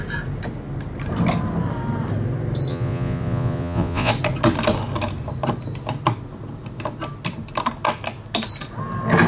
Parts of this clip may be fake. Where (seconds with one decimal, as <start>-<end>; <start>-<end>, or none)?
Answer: 2.7-4.1